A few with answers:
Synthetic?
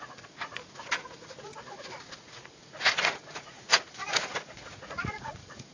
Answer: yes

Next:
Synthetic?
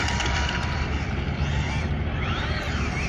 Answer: no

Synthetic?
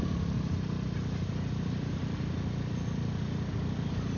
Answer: no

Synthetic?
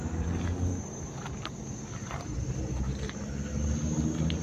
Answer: no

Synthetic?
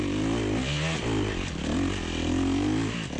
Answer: no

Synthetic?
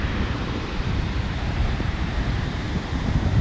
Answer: yes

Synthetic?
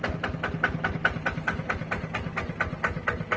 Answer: no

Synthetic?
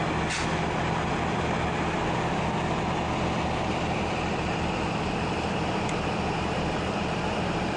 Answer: no